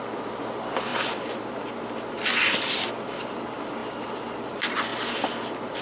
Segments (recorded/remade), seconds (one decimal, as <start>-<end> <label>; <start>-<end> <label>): 0.0-0.9 remade; 0.9-2.1 recorded; 2.1-4.9 remade; 4.9-5.8 recorded